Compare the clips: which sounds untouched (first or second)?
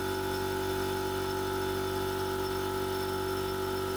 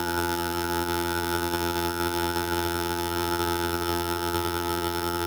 first